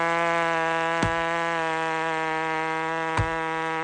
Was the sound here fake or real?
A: real